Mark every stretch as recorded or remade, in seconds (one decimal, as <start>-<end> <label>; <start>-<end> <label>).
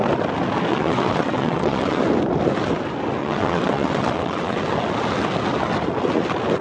0.0-0.7 recorded; 0.7-2.0 remade; 2.0-3.2 recorded; 3.2-4.6 remade; 4.6-6.6 recorded